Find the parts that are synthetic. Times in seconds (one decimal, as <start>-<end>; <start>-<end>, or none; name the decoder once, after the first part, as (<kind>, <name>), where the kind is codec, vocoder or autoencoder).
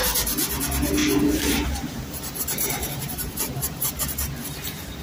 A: 1.0-4.0 (vocoder, BigVGAN v2)